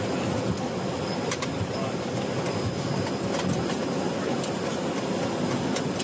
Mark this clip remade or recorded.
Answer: recorded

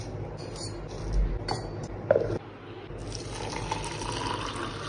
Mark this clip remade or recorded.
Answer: recorded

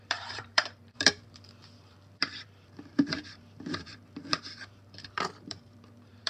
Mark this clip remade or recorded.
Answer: remade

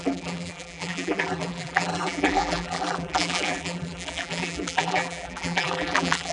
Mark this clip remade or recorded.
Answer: remade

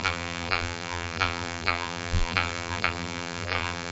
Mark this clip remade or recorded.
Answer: remade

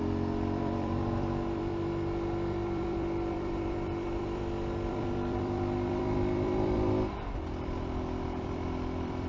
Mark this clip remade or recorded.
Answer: remade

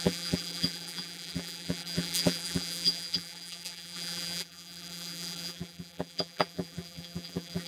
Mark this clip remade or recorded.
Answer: remade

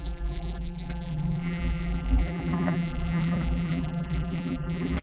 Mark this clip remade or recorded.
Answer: remade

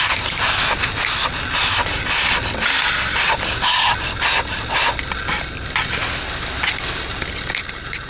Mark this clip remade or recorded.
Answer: recorded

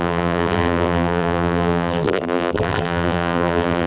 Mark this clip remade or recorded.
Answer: remade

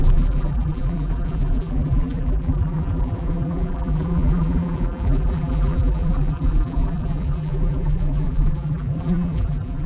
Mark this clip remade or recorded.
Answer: remade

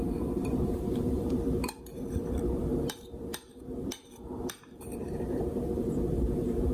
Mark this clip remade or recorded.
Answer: remade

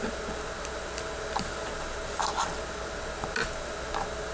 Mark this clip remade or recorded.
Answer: recorded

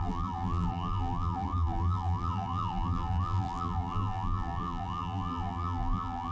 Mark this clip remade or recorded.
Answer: remade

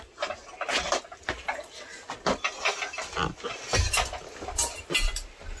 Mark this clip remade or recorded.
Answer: recorded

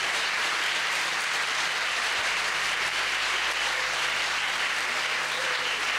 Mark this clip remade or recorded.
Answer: remade